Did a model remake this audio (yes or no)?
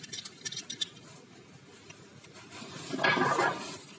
no